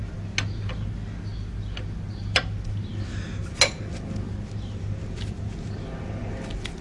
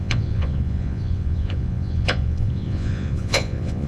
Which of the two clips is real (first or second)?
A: first